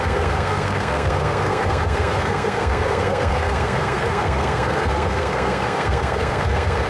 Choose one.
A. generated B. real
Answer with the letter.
A